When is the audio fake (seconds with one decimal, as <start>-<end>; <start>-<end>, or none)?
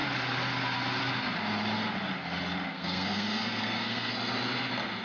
2.7-4.1